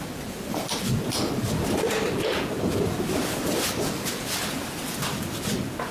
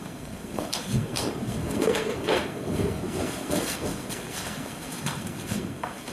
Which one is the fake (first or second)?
second